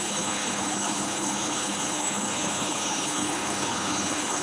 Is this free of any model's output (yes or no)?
no